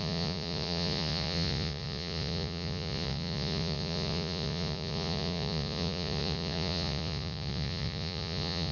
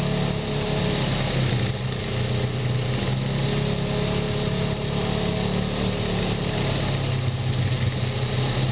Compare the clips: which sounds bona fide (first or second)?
second